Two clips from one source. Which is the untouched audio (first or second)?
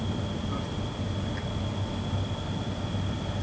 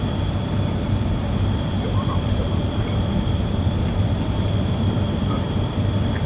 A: first